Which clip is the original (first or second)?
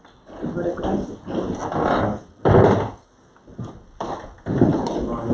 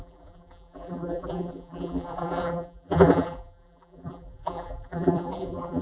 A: first